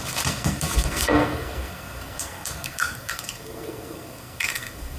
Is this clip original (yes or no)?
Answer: no